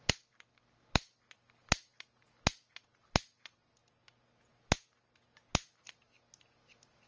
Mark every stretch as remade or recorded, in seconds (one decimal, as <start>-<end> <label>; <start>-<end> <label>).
0.0-7.1 recorded